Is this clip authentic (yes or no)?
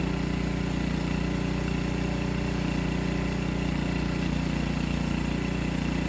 yes